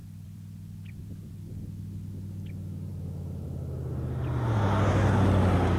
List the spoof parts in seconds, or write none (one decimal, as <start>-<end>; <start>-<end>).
0.0-1.0